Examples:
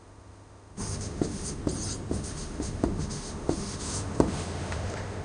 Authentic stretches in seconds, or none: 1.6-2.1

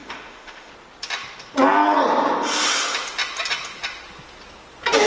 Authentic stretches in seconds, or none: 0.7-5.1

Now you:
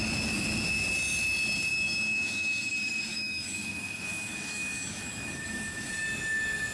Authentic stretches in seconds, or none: 0.0-1.7; 2.7-3.1; 5.9-6.7